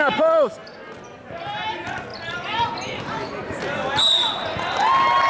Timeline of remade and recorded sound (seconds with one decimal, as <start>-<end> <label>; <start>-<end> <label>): 0.0-5.3 recorded